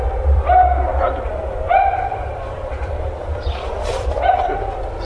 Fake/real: fake